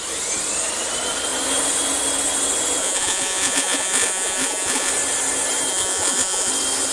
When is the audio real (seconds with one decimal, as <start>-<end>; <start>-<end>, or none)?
0.0-2.8; 4.9-5.7; 6.5-6.9